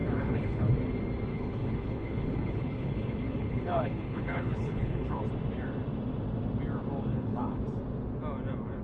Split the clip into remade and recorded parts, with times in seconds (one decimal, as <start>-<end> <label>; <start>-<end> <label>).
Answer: 0.0-0.7 remade; 0.7-1.3 recorded; 1.3-5.2 remade; 5.2-7.1 recorded; 7.1-7.6 remade; 7.6-8.8 recorded

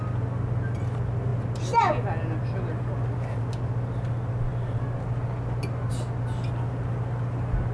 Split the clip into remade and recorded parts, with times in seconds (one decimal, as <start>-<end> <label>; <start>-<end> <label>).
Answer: 0.0-7.7 recorded

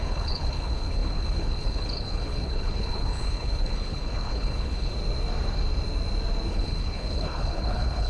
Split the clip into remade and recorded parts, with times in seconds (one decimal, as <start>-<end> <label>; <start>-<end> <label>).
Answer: 0.0-4.9 remade; 4.9-6.5 recorded; 6.5-8.1 remade